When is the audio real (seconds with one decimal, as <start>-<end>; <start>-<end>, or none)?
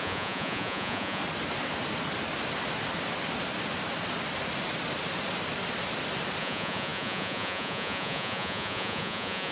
1.2-6.4